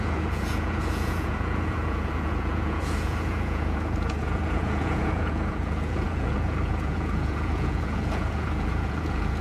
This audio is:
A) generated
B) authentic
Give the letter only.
A